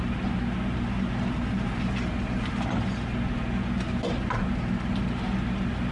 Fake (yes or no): no